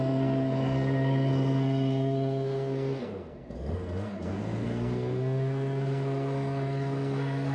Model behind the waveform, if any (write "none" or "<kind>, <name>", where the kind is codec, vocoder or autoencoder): codec, SNAC